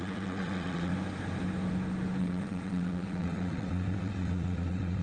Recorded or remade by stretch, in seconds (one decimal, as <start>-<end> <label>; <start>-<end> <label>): 0.0-0.9 remade; 0.9-2.2 recorded; 2.2-5.0 remade